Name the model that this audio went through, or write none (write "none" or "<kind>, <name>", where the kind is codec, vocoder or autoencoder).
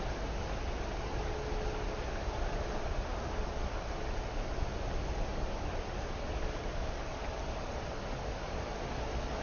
none